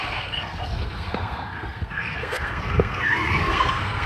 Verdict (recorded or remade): remade